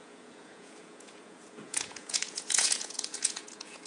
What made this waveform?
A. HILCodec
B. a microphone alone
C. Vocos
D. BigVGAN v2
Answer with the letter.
C